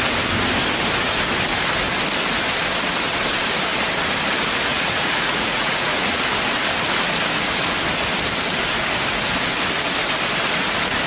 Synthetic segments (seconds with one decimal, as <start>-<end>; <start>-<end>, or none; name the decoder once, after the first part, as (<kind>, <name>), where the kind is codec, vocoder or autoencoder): 4.7-6.2 (vocoder, Vocos)